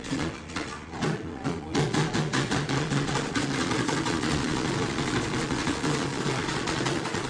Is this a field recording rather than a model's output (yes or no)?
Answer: no